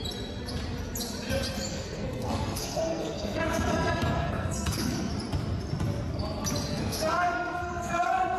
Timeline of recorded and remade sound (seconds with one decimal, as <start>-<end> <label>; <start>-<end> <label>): 0.0-1.7 recorded; 1.7-5.1 remade; 5.1-6.7 recorded; 6.7-8.4 remade